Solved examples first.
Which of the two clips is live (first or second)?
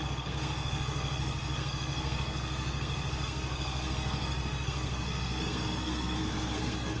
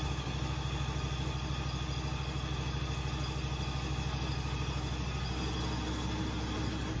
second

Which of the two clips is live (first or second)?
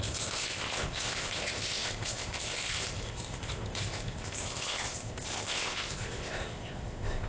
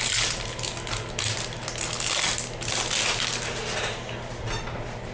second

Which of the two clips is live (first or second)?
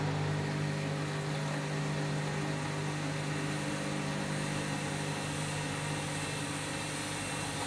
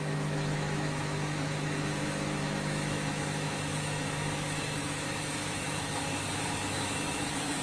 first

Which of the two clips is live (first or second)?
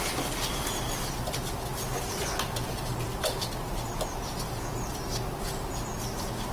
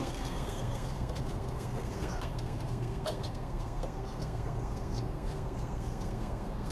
first